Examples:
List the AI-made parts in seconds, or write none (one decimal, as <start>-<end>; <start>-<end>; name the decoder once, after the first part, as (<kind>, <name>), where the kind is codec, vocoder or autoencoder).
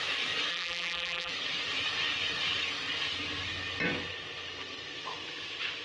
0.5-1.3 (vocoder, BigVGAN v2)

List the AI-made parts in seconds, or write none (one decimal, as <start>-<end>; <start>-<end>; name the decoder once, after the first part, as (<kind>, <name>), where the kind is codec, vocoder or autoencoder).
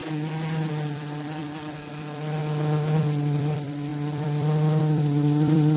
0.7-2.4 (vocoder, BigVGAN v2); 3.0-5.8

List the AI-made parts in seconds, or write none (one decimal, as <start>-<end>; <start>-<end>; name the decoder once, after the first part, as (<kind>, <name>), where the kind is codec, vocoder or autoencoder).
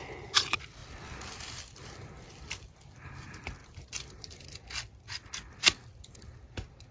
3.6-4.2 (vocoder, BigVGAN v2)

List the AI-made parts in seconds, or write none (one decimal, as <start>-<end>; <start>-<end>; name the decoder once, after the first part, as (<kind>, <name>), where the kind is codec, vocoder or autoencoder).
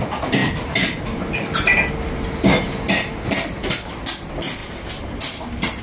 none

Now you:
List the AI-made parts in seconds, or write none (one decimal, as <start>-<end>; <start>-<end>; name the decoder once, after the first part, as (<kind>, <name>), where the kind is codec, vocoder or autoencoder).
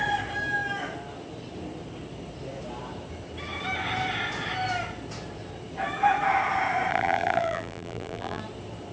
6.9-8.4 (vocoder, BigVGAN v2)